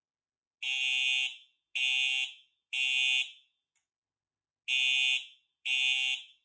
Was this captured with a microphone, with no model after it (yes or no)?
yes